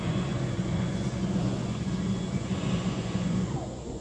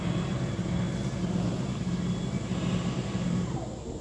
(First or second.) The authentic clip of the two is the second